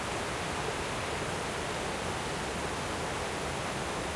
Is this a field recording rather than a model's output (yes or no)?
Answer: yes